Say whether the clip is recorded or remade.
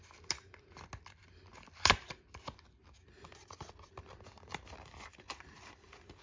recorded